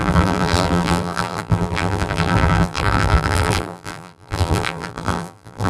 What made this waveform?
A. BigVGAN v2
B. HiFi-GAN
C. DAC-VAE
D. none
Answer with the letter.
A